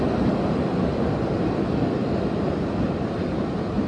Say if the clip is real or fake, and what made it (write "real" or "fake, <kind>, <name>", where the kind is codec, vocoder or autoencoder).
real